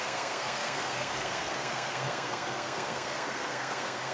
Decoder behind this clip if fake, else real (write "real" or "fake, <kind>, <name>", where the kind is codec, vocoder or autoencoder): fake, codec, SNAC